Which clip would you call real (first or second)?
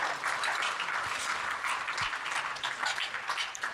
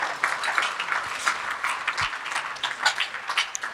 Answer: second